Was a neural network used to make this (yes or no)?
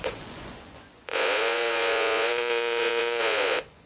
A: yes